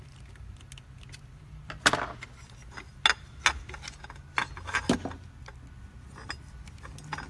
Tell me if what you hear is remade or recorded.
recorded